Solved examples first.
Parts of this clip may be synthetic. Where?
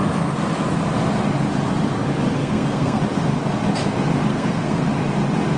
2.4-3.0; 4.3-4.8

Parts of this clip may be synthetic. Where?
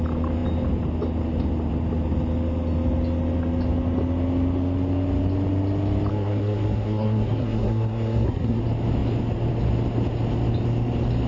6.1-8.6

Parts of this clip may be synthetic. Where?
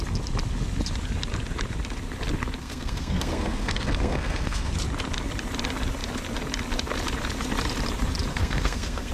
2.6-4.7; 8.3-9.1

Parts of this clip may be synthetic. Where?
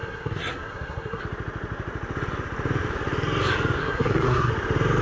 0.0-1.2; 3.8-4.5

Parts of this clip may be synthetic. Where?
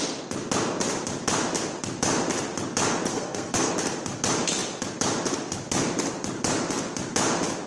3.1-3.7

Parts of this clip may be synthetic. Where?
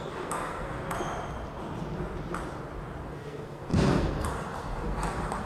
0.0-0.8; 3.0-5.5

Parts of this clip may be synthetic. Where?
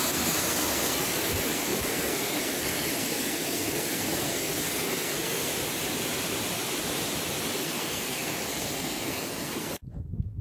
0.0-5.5; 7.6-10.4